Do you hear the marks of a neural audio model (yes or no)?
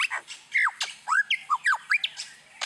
no